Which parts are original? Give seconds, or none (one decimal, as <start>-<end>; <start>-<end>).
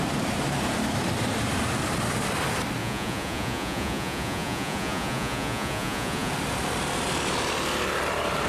0.0-2.8; 6.3-8.5